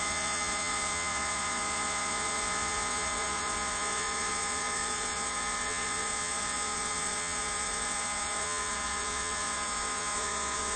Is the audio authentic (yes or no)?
no